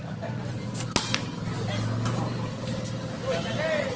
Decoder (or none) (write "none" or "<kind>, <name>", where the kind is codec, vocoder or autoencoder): none